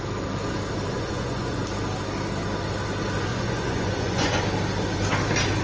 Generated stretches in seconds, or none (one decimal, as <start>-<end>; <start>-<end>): 0.9-1.6; 3.3-4.4